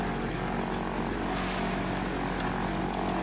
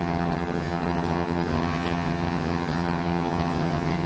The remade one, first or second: second